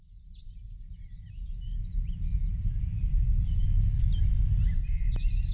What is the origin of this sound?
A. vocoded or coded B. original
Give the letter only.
B